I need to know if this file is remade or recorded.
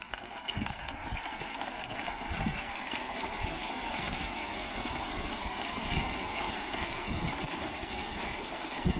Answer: remade